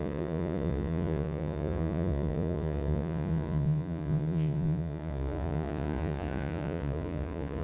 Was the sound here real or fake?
fake